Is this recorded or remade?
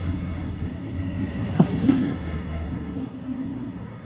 remade